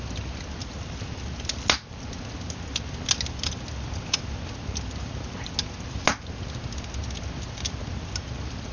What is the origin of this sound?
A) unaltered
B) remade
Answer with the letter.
A